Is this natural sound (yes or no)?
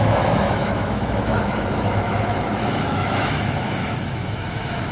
no